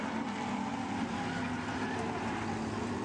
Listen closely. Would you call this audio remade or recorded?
recorded